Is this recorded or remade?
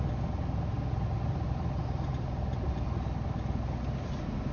recorded